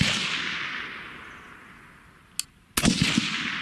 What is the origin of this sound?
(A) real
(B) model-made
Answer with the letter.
A